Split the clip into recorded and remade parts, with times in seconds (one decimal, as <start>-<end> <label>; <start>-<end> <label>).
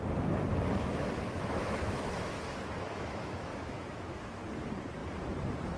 0.0-0.9 recorded; 0.9-4.4 remade; 4.4-5.8 recorded